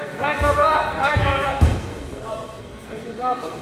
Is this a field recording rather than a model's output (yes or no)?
no